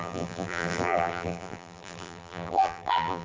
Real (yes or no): no